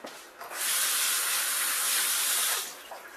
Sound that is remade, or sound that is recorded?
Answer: recorded